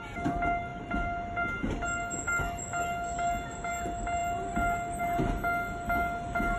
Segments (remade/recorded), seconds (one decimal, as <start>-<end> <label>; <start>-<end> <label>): 0.0-6.6 recorded

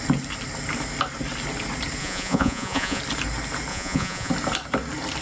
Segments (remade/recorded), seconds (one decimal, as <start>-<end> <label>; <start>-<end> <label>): 0.0-2.0 recorded; 2.0-3.0 remade; 3.0-3.7 recorded; 3.7-4.3 remade; 4.3-5.2 recorded

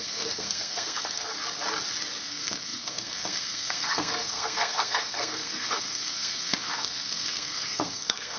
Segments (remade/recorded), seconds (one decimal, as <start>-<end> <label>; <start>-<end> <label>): 0.0-1.3 remade; 1.3-2.2 recorded; 2.2-8.4 remade

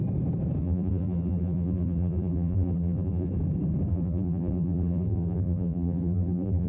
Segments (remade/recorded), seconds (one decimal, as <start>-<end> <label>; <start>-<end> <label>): 0.0-0.6 recorded; 0.6-3.3 remade; 3.3-3.9 recorded; 3.9-6.7 remade

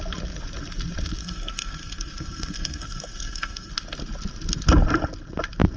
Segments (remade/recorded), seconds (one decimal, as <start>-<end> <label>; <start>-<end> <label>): 0.0-1.2 recorded; 1.2-3.7 remade; 3.7-5.8 recorded

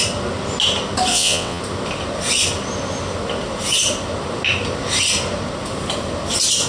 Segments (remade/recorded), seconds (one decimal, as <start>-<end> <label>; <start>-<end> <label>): 0.0-1.1 recorded; 1.1-1.6 remade; 1.6-6.7 recorded

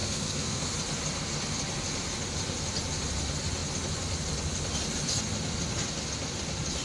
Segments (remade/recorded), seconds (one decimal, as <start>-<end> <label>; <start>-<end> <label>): 0.0-0.6 remade; 0.6-6.8 recorded

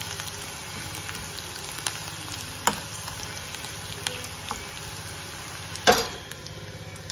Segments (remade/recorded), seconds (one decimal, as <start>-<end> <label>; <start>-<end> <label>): 0.0-7.1 recorded